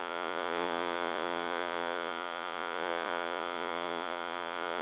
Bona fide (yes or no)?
no